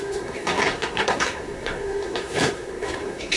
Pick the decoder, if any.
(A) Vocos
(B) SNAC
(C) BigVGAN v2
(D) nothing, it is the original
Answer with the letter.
B